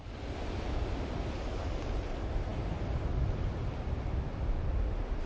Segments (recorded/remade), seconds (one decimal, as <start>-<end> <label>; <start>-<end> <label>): 0.0-5.3 recorded